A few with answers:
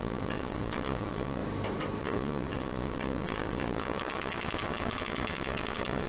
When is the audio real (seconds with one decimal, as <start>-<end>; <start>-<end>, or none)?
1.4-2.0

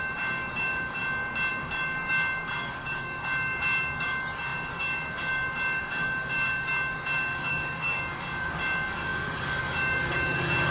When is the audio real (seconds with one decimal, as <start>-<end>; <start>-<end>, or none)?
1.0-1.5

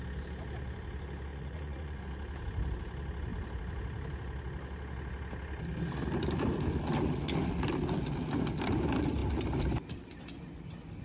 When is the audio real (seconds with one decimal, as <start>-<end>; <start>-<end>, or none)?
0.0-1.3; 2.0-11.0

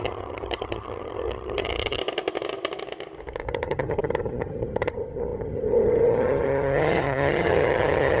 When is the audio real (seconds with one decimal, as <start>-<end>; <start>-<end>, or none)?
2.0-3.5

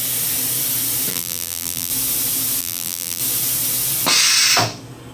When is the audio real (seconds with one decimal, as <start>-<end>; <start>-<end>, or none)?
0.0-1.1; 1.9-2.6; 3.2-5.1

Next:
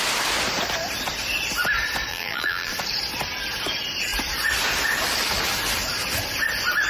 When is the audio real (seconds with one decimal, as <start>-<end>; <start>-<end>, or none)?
0.0-2.1; 2.7-6.9